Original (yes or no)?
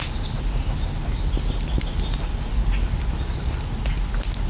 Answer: yes